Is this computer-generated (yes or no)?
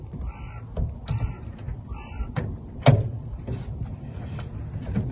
no